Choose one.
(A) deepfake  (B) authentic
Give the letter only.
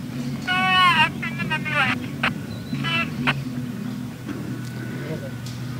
B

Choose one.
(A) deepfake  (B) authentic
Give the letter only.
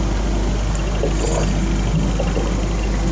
B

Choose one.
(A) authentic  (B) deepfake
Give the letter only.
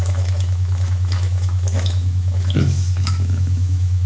B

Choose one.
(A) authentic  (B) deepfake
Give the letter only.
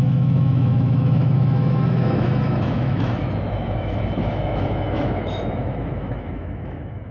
B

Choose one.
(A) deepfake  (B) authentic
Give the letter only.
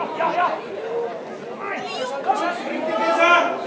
B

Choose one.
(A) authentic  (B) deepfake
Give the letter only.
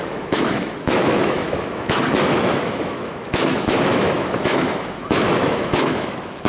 B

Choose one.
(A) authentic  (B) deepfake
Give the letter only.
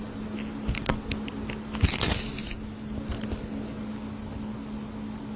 A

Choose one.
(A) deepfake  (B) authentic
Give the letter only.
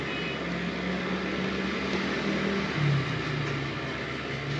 B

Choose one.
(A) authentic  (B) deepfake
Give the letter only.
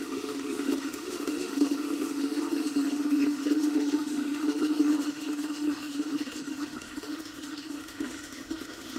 B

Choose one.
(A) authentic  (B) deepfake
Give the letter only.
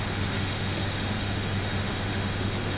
B